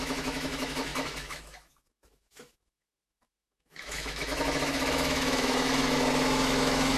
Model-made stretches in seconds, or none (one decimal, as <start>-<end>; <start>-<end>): 0.0-7.0